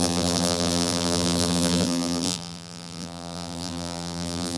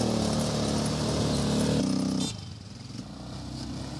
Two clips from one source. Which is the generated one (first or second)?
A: first